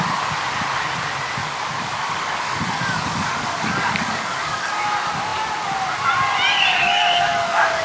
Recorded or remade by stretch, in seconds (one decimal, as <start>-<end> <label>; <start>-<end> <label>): 0.0-1.4 recorded; 1.4-4.7 remade; 4.7-6.7 recorded; 6.7-7.8 remade